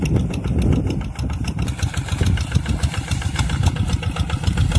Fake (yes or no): no